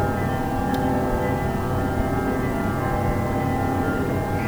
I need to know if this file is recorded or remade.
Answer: recorded